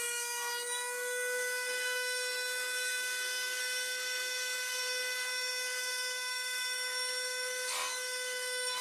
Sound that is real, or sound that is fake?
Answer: fake